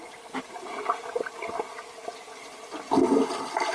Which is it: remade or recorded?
recorded